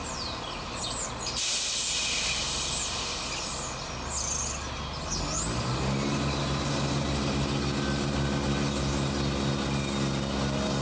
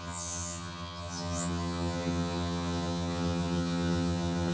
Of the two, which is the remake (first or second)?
second